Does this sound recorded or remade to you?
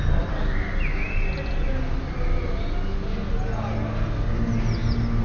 recorded